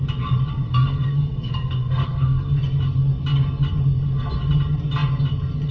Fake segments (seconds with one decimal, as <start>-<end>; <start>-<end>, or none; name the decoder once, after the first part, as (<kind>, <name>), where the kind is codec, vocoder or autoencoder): 0.5-2.6 (codec, SNAC)